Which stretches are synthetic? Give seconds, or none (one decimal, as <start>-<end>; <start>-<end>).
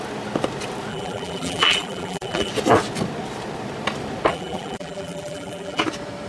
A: 0.9-2.5; 4.3-5.8